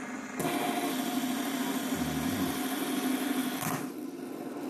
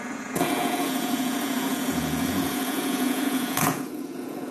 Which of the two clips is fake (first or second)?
second